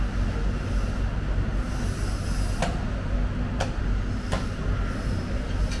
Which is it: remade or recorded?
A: recorded